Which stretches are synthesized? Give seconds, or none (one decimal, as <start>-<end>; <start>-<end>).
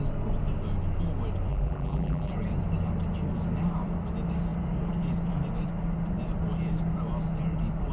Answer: 1.5-2.3